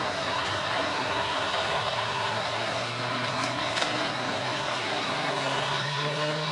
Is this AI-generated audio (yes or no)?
yes